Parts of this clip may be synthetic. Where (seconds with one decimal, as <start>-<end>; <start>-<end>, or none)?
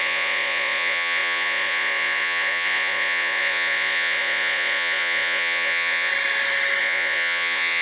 0.0-6.1; 6.8-7.8